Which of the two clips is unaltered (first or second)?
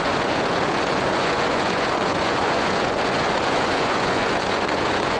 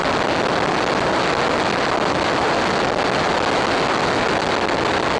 second